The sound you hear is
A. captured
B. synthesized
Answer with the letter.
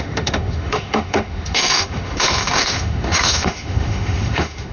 B